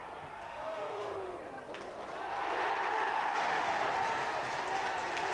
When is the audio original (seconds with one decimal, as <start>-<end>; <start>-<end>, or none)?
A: 0.0-0.5; 1.4-2.9; 3.8-5.3